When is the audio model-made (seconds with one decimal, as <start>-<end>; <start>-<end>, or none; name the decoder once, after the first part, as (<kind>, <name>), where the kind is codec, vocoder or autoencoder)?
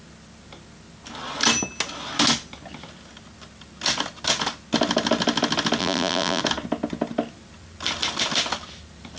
5.8-6.4 (vocoder, BigVGAN v2)